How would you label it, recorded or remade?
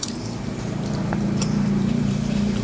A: remade